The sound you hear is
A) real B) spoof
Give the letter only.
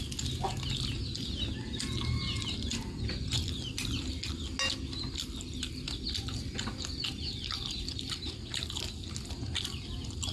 A